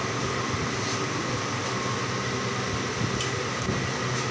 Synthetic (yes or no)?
no